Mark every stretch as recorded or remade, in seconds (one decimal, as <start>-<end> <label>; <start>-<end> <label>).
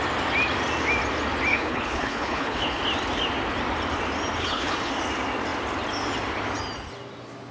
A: 0.0-1.5 recorded; 1.5-2.8 remade; 2.8-4.4 recorded; 4.4-4.9 remade; 4.9-7.5 recorded